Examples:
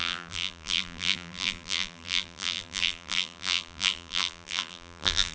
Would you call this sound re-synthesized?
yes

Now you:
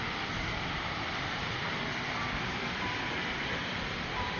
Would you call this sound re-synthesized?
yes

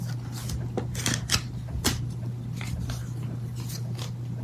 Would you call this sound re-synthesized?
no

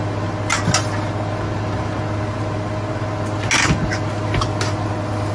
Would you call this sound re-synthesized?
no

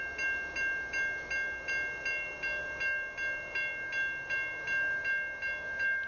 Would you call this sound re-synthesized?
no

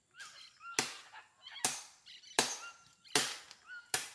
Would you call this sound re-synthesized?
no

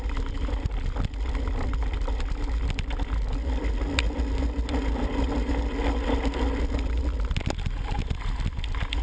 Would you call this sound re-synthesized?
no